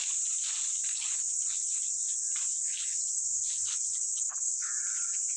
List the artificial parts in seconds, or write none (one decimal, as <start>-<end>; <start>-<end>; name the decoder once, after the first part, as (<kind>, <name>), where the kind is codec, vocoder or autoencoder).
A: 0.9-2.0 (codec, HILCodec); 2.6-4.7